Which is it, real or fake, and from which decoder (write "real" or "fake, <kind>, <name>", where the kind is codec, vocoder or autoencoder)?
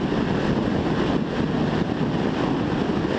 real